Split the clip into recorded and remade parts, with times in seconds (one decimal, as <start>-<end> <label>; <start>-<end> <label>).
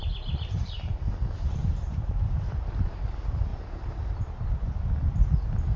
0.0-1.6 recorded; 1.6-3.0 remade; 3.0-3.5 recorded; 3.5-4.2 remade; 4.2-5.8 recorded